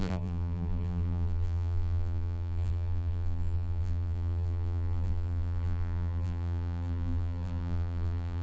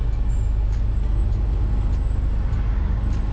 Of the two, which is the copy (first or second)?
first